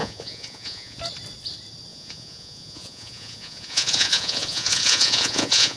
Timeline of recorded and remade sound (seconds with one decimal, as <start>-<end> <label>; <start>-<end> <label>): 0.0-1.0 remade; 1.0-1.9 recorded; 1.9-5.8 remade